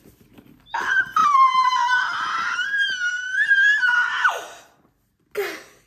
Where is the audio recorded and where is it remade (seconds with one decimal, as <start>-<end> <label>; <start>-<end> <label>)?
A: 0.0-5.9 recorded